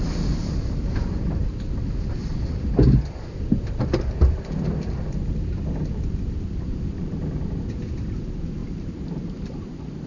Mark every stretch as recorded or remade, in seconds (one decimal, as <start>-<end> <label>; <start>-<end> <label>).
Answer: 0.0-1.4 remade; 1.4-6.6 recorded; 6.6-10.1 remade

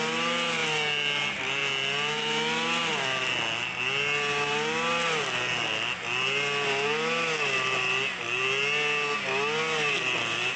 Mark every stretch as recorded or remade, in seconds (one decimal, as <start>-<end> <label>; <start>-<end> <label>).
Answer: 0.0-10.6 recorded

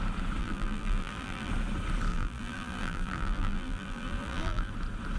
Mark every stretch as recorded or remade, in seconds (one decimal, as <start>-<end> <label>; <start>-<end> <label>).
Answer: 0.0-0.4 recorded; 0.4-1.5 remade; 1.5-2.1 recorded; 2.1-4.7 remade; 4.7-5.2 recorded

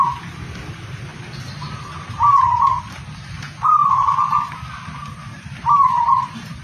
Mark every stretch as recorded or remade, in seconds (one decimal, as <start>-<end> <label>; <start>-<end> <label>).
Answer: 0.0-3.8 remade; 3.8-4.5 recorded; 4.5-6.6 remade